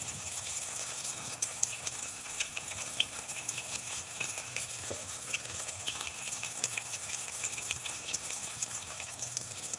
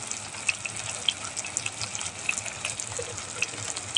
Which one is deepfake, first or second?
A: first